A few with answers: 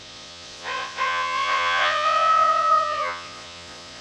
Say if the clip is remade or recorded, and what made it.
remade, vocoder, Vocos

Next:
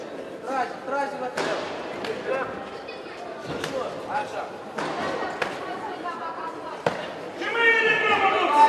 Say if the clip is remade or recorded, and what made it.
recorded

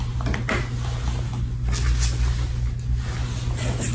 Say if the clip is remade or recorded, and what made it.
recorded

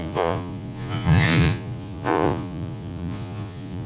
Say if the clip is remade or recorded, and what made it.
remade, vocoder, Vocos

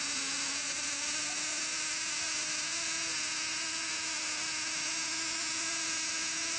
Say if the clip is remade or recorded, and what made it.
recorded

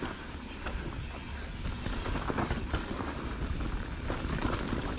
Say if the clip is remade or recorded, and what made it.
recorded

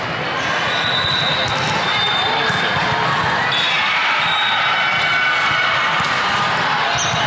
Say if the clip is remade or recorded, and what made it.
recorded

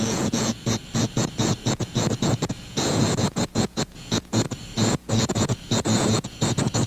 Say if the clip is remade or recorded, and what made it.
remade, vocoder, Vocos